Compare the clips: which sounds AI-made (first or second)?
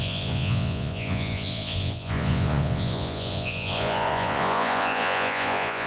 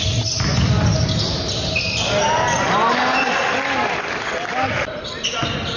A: first